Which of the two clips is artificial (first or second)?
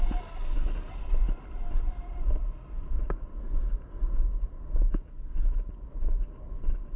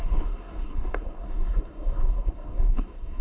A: second